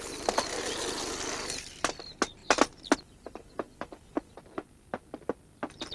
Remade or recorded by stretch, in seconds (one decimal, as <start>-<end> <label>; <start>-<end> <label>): 0.0-5.9 recorded